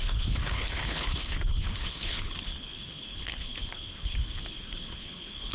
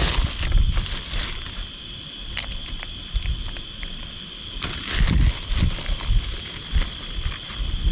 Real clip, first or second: second